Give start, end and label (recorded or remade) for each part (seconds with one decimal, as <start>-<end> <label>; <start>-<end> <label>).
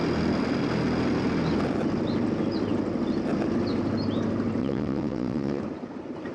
0.0-4.6 recorded; 4.6-5.6 remade; 5.6-6.3 recorded